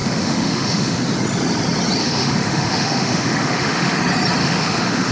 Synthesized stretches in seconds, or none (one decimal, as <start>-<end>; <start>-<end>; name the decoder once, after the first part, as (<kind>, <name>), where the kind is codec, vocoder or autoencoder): 0.0-1.0 (autoencoder, DAC-VAE); 2.0-4.0; 4.4-5.1